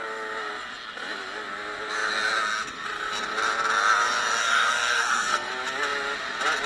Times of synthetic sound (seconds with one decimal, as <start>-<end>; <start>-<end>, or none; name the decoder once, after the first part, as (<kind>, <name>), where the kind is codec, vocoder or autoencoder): 4.4-5.5 (codec, SNAC)